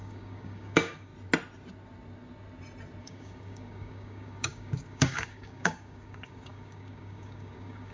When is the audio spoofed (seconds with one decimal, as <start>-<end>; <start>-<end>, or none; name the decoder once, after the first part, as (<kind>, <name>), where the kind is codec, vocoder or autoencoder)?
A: 0.0-1.1 (codec, DAC); 3.0-7.9